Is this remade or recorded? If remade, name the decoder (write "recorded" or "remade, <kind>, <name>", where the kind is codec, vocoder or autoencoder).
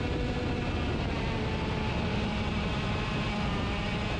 recorded